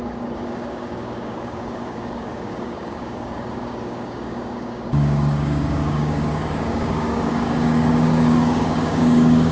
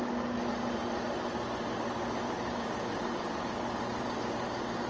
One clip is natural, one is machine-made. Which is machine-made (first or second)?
first